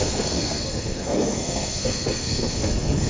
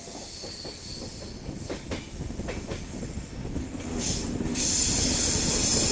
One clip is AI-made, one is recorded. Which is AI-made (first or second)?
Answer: first